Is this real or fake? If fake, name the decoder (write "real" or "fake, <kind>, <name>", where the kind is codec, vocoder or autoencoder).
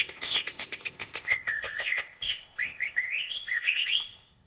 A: fake, codec, ZipCodec